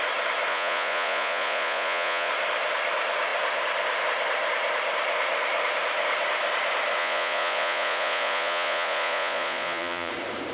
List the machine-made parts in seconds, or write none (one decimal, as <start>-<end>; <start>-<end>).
0.5-2.3; 7.0-10.1